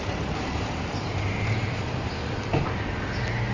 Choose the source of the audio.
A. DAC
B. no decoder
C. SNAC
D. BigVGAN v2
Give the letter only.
B